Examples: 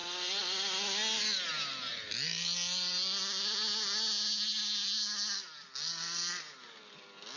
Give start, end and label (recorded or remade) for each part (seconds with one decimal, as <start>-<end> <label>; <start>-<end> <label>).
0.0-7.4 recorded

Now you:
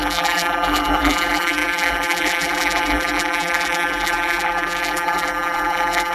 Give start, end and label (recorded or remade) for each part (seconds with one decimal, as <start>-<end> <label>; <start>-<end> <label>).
0.0-6.1 remade

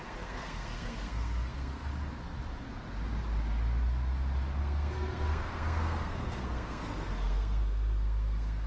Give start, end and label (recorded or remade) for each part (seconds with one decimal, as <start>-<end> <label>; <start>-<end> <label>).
0.0-1.9 remade; 1.9-4.6 recorded; 4.6-8.7 remade

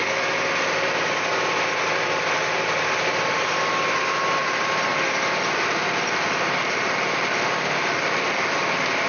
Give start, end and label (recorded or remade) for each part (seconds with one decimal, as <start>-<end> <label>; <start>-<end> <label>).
0.0-4.4 recorded; 4.4-4.9 remade; 4.9-5.4 recorded; 5.4-9.1 remade

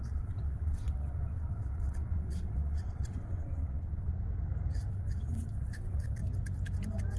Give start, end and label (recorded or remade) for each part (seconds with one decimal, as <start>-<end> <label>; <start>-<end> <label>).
0.0-4.1 remade; 4.1-4.9 recorded; 4.9-6.2 remade; 6.2-7.2 recorded